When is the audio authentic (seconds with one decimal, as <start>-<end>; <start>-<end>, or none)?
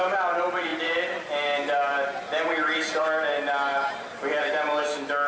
0.0-5.3